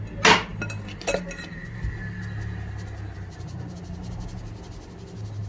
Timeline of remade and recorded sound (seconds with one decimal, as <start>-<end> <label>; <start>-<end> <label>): 0.0-5.5 recorded